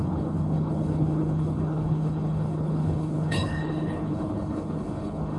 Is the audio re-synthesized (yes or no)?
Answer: yes